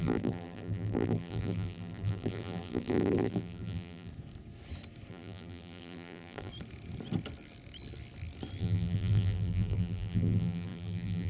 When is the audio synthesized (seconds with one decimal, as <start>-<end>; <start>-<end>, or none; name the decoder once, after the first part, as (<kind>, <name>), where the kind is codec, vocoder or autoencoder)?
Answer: 0.0-4.1 (vocoder, BigVGAN v2); 5.1-6.5; 8.6-11.3